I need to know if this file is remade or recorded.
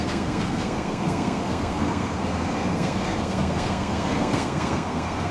remade